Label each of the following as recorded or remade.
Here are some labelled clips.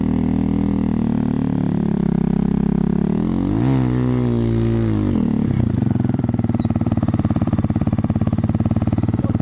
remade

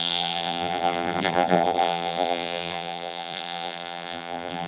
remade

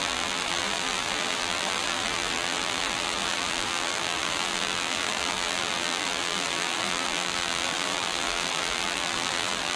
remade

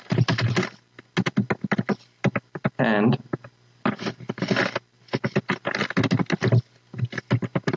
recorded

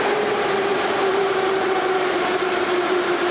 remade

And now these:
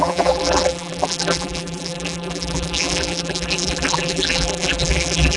remade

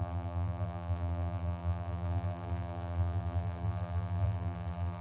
remade